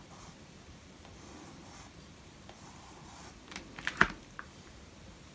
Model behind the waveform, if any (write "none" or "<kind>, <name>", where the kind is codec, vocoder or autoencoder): vocoder, BigVGAN v2